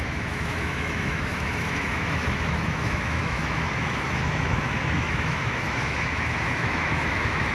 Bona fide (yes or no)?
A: no